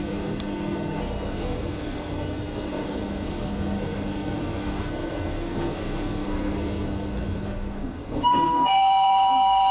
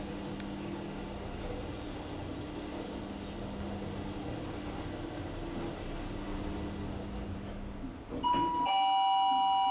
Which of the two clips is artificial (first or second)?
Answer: first